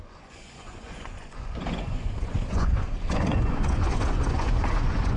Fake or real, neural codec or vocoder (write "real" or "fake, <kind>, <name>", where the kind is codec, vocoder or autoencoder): fake, vocoder, Vocos